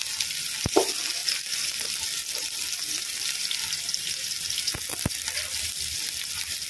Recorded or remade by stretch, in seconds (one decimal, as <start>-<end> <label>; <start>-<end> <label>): 0.0-6.7 remade

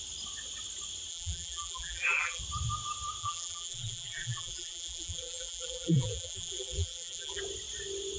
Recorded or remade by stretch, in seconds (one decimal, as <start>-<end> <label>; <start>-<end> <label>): 0.0-1.1 recorded; 1.1-2.4 remade; 2.4-3.2 recorded; 3.2-7.4 remade; 7.4-8.2 recorded

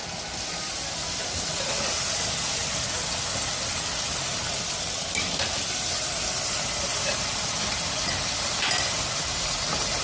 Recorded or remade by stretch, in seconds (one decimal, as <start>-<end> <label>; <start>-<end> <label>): 0.0-10.0 recorded

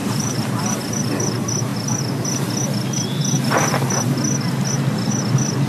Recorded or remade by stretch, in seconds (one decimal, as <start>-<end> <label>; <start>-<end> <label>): 0.0-0.6 remade; 0.6-5.7 recorded